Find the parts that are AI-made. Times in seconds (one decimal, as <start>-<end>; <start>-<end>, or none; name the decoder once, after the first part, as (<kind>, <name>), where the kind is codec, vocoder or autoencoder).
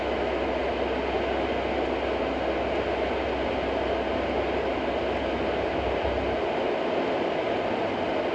none